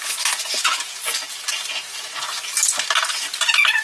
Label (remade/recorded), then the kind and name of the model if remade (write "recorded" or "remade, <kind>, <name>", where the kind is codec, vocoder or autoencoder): recorded